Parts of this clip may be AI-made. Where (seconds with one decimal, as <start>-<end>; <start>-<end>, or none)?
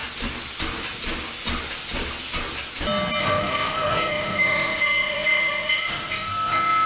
3.2-6.9